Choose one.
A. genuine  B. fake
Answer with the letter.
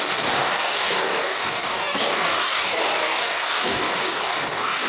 B